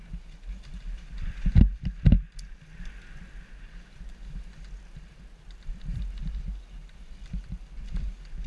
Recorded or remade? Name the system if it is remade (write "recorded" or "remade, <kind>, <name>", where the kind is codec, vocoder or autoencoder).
recorded